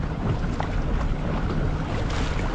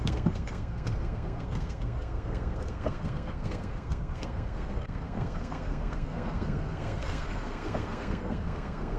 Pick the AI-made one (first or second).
second